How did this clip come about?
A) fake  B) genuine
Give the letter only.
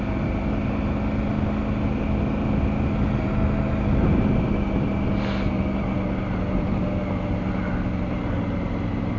B